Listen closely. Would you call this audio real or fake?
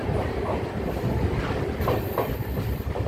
fake